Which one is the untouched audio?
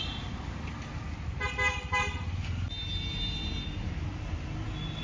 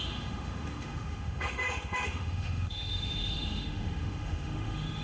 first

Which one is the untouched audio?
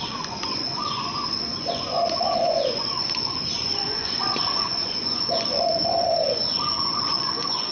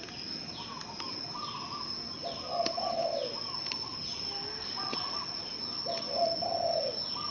second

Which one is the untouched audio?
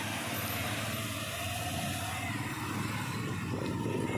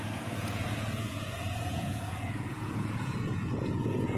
first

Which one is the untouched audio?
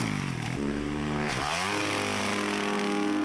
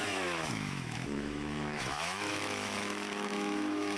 first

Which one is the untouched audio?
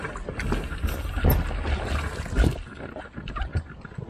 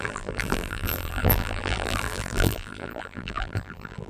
first